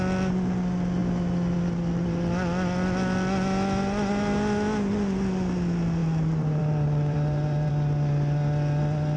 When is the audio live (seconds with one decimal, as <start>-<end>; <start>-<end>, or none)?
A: 0.0-6.0; 7.7-9.2